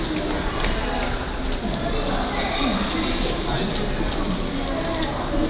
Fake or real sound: real